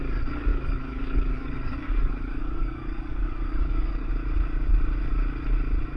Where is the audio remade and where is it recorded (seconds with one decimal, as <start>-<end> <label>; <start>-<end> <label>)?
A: 0.0-0.5 recorded; 0.5-4.1 remade; 4.1-6.0 recorded